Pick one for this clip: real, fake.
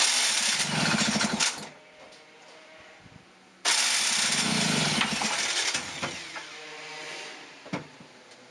real